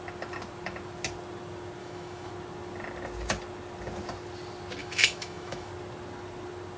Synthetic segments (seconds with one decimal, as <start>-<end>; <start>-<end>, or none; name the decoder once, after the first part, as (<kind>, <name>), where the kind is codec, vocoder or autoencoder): 1.8-2.3 (autoencoder, DAC-VAE); 4.8-5.7